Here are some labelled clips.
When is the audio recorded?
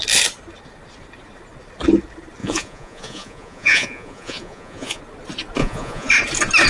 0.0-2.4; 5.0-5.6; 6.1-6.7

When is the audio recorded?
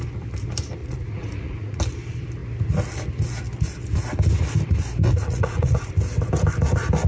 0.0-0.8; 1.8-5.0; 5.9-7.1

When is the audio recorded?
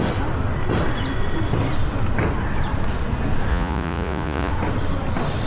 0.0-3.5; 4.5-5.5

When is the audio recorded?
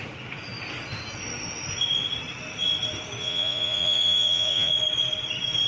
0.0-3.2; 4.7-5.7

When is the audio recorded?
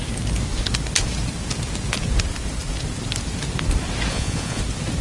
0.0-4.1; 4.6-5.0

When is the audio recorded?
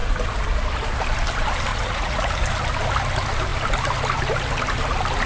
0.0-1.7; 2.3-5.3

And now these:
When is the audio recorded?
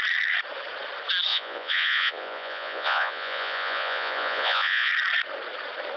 0.0-1.3; 4.9-6.0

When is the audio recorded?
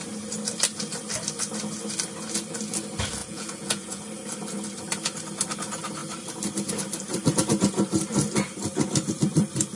0.0-3.2; 4.0-9.8